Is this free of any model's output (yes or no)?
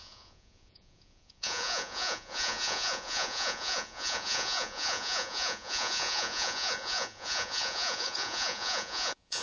no